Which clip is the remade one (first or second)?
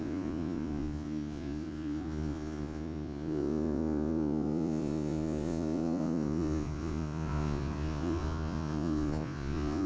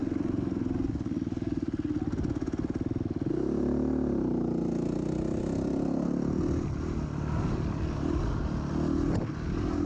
first